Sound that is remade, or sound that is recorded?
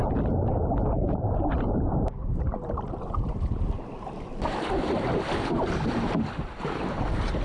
remade